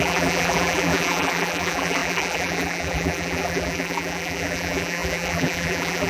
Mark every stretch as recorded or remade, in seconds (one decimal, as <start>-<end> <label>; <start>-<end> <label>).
0.0-6.1 remade